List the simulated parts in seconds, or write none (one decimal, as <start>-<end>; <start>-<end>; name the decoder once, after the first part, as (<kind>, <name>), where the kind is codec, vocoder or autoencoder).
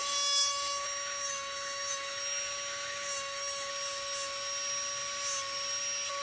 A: 0.0-3.7 (autoencoder, DAC-VAE)